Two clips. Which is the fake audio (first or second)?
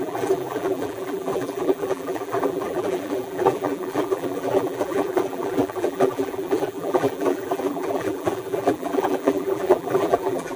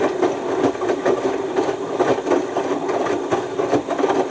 first